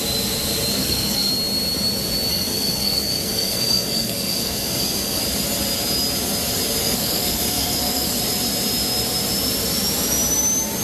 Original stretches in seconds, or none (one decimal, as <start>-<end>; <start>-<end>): 0.0-0.7; 1.3-2.3; 5.2-6.8; 8.2-10.8